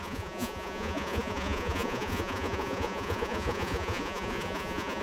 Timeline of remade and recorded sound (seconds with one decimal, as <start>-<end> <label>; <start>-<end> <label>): 0.0-5.0 remade